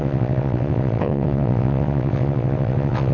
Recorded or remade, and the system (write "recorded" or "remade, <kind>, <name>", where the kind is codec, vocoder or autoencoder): remade, vocoder, WaveNeXt